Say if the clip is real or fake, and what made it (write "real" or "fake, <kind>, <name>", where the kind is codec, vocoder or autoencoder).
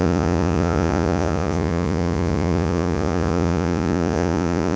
fake, vocoder, Vocos